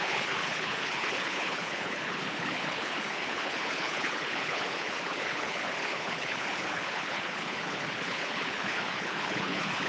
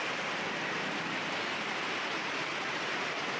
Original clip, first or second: second